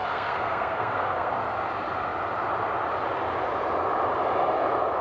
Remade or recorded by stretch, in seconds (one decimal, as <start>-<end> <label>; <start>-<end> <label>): 0.0-1.3 remade; 1.3-5.0 recorded